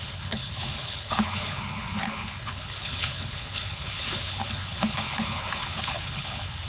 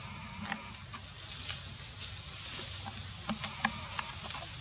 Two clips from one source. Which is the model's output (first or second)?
first